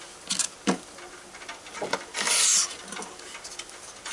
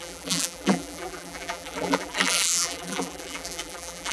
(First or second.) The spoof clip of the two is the second